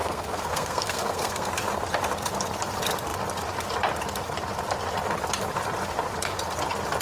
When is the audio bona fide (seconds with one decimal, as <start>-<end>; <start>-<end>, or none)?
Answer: 1.5-7.0